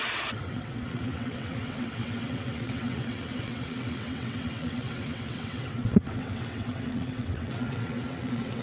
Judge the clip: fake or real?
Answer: fake